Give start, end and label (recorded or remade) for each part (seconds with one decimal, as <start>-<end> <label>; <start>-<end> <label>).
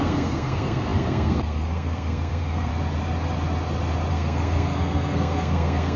0.0-2.7 remade; 2.7-4.1 recorded; 4.1-6.0 remade